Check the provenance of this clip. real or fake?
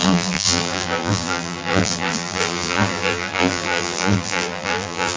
fake